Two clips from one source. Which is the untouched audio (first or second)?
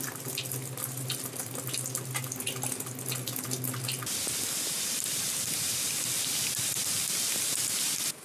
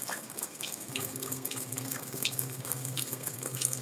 first